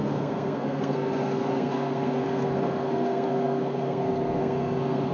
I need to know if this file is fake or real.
fake